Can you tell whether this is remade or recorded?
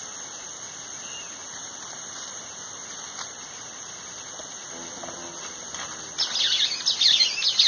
recorded